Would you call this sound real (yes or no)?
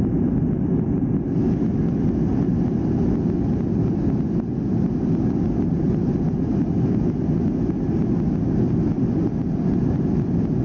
yes